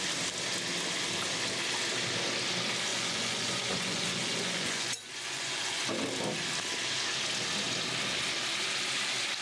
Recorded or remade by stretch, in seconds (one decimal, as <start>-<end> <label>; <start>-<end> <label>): 0.0-2.9 recorded; 2.9-5.8 remade; 5.8-9.4 recorded